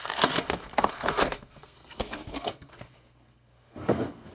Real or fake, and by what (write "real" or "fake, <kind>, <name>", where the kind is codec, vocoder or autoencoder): fake, codec, SNAC